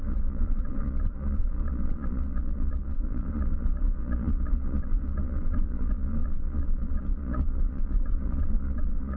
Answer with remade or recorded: remade